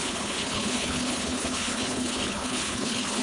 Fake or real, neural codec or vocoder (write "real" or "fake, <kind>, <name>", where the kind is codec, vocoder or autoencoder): fake, codec, HILCodec